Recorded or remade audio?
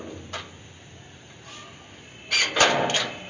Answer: recorded